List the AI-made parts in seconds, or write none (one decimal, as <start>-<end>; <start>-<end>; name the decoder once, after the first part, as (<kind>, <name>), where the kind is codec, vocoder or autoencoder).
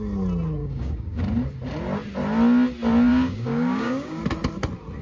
0.6-1.2 (codec, DAC); 3.1-4.2